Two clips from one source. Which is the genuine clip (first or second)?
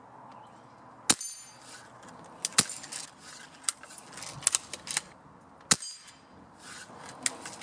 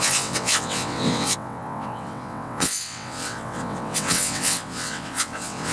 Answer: first